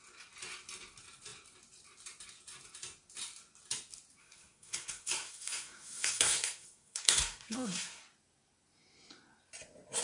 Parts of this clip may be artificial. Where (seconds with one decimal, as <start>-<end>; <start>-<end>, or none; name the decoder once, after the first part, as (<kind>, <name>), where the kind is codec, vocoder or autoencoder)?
4.2-8.0 (codec, SNAC)